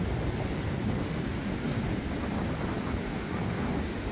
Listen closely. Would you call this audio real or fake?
real